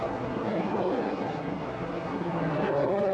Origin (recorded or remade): remade